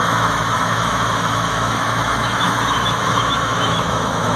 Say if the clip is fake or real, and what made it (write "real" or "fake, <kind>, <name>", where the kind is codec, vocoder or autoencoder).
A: fake, autoencoder, DAC-VAE